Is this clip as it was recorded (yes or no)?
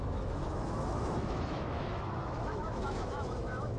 no